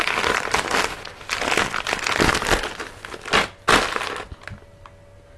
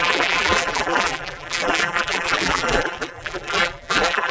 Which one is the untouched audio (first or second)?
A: first